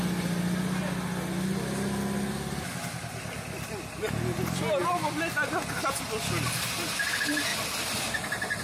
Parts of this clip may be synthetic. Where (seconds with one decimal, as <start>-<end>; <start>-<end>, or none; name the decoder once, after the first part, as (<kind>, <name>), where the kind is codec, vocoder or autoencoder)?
none